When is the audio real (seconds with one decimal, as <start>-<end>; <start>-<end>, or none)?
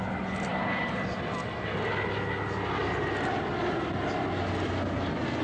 0.0-5.4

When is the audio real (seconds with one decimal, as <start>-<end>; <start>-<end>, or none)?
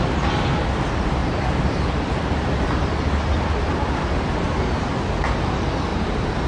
0.0-1.2; 2.5-5.9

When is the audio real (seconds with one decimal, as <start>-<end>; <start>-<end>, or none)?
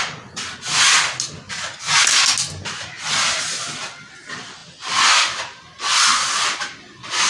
0.0-7.3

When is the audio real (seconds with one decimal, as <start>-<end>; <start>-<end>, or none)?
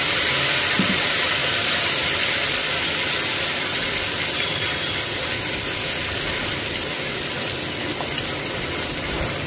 0.0-1.4; 2.3-9.5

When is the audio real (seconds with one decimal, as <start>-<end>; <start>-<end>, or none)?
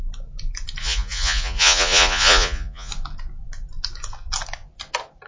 0.0-0.8; 2.9-5.3